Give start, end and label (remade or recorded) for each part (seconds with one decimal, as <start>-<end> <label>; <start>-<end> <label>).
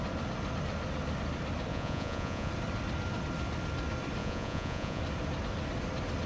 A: 0.0-1.7 recorded; 1.7-2.5 remade; 2.5-4.2 recorded; 4.2-5.0 remade; 5.0-6.3 recorded